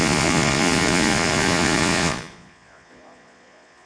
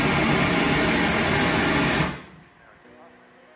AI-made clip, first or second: first